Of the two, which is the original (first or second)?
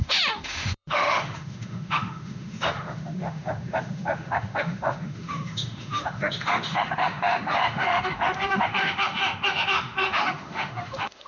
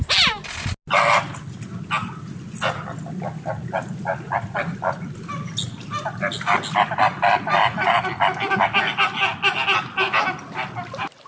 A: second